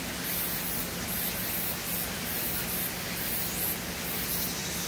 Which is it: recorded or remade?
recorded